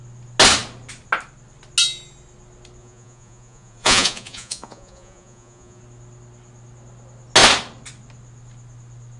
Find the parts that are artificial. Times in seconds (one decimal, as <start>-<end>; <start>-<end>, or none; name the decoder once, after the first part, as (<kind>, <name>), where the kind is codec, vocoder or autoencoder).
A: 2.8-5.8 (vocoder, Vocos)

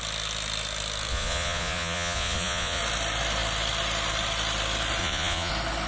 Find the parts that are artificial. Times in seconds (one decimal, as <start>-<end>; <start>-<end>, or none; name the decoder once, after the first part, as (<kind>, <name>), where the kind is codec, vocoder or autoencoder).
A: 1.1-2.8 (vocoder, Vocos); 5.0-5.5

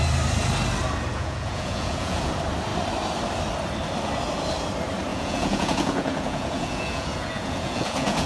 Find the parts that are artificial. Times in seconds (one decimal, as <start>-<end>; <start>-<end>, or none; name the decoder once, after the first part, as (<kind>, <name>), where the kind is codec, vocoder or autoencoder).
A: 1.1-2.3 (vocoder, Vocos); 5.1-8.3

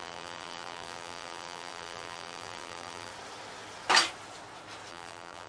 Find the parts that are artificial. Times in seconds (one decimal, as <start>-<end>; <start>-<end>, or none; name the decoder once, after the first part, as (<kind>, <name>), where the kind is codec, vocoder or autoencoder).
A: 0.0-3.1 (vocoder, BigVGAN v2); 4.9-5.5